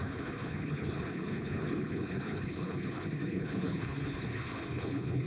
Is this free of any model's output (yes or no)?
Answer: no